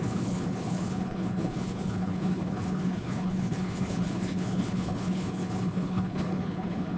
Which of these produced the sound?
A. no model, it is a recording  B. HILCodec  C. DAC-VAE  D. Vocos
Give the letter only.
B